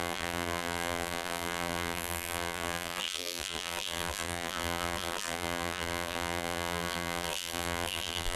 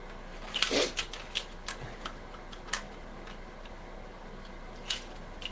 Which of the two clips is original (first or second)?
second